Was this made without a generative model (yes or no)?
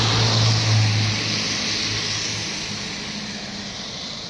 yes